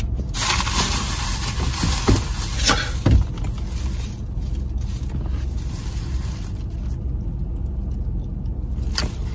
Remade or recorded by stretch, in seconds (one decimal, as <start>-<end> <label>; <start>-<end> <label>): 0.0-9.3 recorded